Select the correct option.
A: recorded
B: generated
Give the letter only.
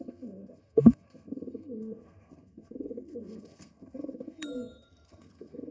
B